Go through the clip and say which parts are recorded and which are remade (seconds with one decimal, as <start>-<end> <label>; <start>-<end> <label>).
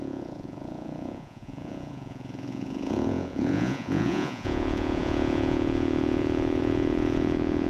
0.0-7.7 remade